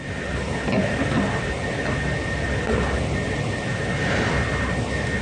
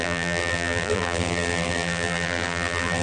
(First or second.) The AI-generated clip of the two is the second